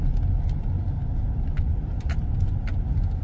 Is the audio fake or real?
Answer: real